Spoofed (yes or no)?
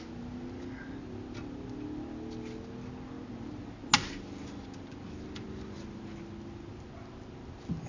no